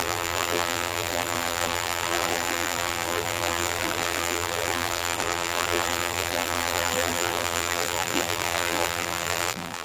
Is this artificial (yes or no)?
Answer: yes